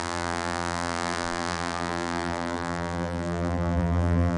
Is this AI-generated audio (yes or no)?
yes